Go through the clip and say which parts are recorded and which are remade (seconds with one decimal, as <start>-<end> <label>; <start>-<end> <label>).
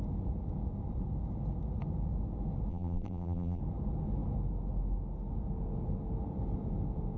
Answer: 0.0-2.7 recorded; 2.7-3.6 remade; 3.6-7.2 recorded